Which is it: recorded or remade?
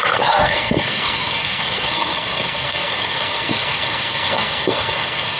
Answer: remade